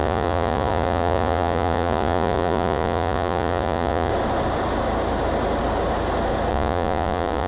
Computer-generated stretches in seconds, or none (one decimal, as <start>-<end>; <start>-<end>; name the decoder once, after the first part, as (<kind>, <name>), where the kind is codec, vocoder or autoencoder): 0.0-4.1 (vocoder, Vocos); 6.5-7.5